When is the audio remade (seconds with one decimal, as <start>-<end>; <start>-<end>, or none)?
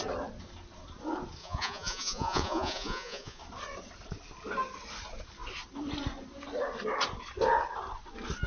1.4-3.4